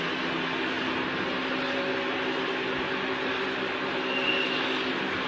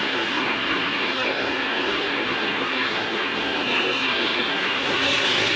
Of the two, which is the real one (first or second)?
first